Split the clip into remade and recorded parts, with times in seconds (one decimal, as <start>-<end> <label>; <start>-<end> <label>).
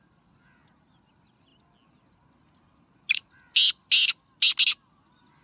0.0-1.5 remade; 1.5-4.7 recorded; 4.7-5.4 remade